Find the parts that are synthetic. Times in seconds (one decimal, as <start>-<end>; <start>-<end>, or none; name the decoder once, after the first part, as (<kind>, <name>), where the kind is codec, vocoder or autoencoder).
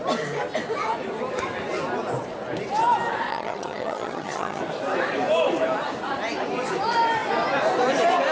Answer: 3.3-4.6 (vocoder, HiFi-GAN)